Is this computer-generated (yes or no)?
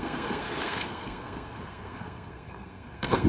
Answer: yes